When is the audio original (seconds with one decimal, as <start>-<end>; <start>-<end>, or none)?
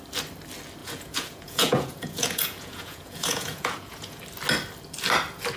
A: 0.0-0.8; 4.2-5.6